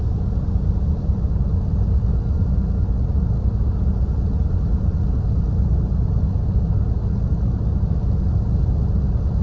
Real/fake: real